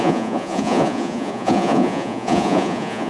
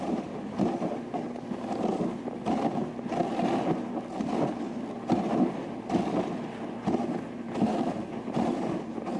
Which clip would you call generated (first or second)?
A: first